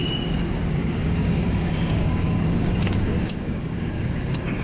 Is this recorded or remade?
remade